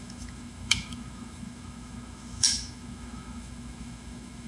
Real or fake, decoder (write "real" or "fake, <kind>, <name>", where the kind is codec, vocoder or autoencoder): fake, autoencoder, DAC-VAE